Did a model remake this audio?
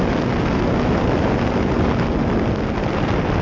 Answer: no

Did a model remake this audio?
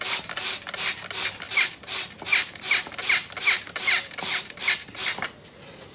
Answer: no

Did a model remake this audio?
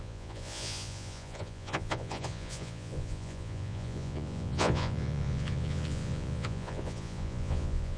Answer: yes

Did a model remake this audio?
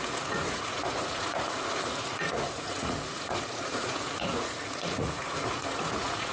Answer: yes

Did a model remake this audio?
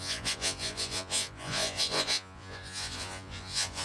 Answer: yes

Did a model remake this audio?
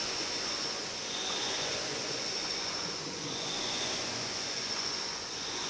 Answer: yes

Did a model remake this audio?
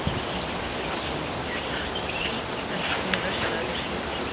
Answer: no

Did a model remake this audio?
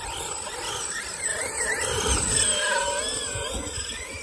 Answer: no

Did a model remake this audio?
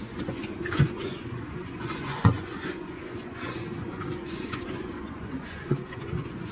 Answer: yes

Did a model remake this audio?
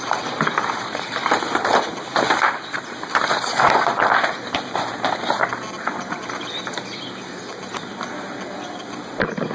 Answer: no